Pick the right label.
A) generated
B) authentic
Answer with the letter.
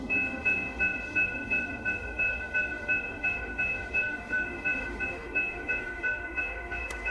A